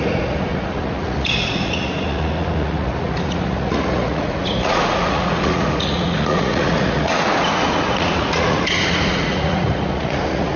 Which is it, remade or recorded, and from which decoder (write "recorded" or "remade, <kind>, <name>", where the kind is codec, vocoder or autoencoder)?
remade, vocoder, Vocos